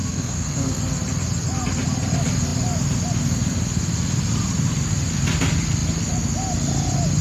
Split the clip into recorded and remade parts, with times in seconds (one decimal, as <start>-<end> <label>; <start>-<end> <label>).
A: 0.0-0.8 remade; 0.8-7.2 recorded